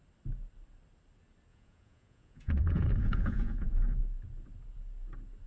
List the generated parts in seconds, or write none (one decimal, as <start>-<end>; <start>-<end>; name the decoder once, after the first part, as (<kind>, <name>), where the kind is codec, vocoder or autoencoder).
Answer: 1.5-4.0 (vocoder, Vocos)